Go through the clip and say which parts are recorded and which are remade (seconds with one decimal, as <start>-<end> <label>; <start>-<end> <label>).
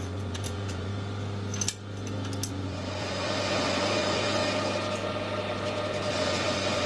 0.0-0.9 remade; 0.9-2.5 recorded; 2.5-4.4 remade; 4.4-6.1 recorded; 6.1-6.9 remade